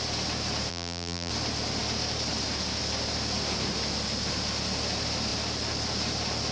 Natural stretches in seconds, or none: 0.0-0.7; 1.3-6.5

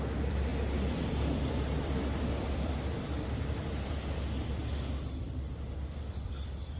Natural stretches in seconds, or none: 0.5-1.1; 4.6-5.2

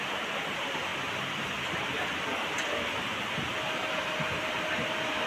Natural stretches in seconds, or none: 0.9-4.1

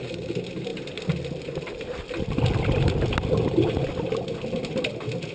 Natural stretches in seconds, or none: 0.0-5.3

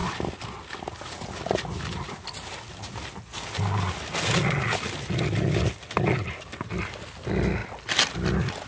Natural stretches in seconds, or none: 0.0-8.7